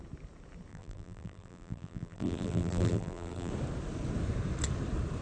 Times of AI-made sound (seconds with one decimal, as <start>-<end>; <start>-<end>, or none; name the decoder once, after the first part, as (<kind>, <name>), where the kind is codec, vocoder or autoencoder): 0.7-3.5 (vocoder, BigVGAN v2)